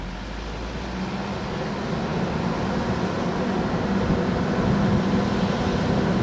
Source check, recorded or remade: recorded